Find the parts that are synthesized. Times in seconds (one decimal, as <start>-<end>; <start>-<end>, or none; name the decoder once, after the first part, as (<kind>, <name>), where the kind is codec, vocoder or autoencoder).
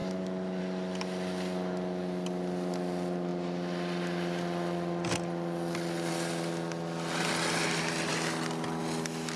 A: none